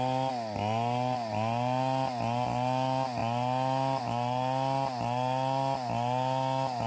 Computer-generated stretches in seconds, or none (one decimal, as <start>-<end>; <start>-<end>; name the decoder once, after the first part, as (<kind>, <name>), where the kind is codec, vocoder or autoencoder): none